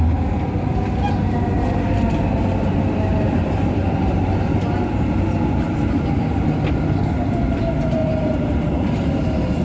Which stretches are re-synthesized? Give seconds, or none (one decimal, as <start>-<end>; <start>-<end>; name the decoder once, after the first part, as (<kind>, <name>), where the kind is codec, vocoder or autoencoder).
3.1-4.6 (vocoder, BigVGAN v2); 8.0-8.8